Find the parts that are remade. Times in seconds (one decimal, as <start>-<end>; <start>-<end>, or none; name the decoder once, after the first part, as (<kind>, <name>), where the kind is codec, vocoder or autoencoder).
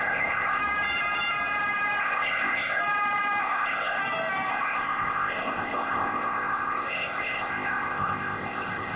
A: 0.0-0.6 (codec, ZipCodec); 2.0-2.8; 3.4-4.0; 4.5-9.0